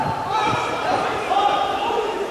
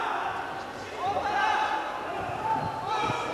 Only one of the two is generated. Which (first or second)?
first